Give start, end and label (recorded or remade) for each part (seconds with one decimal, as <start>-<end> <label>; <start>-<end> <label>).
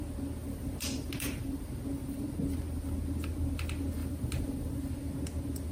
0.0-0.4 recorded; 0.4-1.7 remade; 1.7-4.0 recorded; 4.0-4.9 remade; 4.9-5.7 recorded